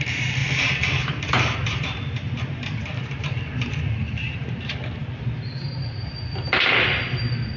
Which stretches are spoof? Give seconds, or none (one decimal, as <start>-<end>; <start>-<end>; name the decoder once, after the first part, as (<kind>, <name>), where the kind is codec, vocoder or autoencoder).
0.0-5.0 (vocoder, BigVGAN v2)